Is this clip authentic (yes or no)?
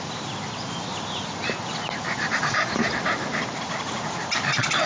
yes